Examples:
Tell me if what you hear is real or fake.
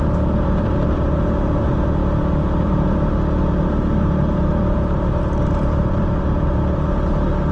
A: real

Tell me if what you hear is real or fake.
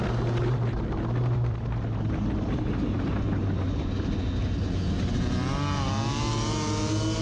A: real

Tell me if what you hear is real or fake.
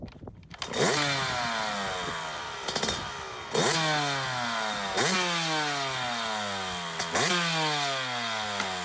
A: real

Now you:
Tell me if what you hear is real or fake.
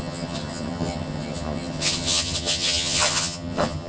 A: fake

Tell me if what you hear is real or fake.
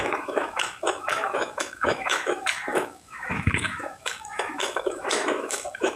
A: fake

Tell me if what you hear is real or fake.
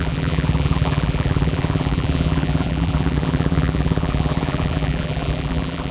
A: fake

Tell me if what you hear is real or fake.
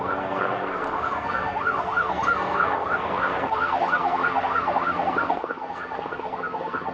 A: fake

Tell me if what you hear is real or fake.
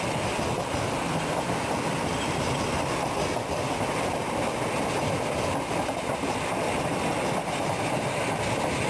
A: real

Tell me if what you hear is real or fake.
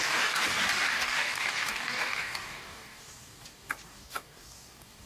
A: fake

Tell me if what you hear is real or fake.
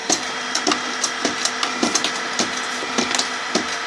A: real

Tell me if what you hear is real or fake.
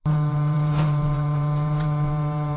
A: fake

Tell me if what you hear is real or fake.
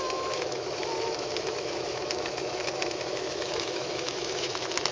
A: fake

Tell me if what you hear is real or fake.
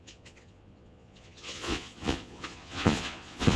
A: fake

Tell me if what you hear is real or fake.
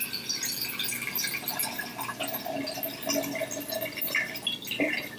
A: real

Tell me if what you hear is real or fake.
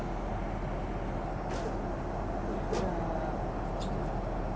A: real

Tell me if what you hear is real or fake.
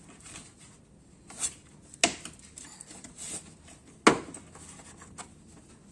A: real